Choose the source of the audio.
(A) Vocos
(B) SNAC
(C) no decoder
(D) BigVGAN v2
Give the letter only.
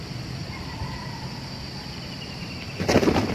C